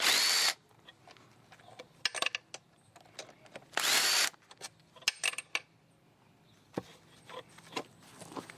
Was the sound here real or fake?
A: real